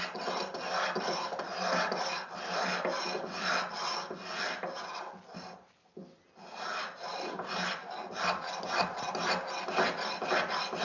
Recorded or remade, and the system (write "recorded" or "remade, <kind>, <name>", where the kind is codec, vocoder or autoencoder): recorded